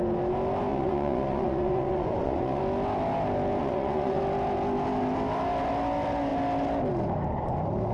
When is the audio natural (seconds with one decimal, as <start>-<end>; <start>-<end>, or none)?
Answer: 0.0-0.7; 2.6-3.6; 4.2-7.9